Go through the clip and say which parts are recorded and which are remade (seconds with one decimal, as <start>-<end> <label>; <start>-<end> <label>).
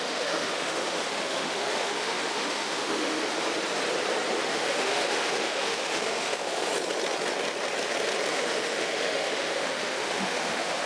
0.0-3.3 remade; 3.3-4.4 recorded; 4.4-6.7 remade; 6.7-8.3 recorded; 8.3-10.9 remade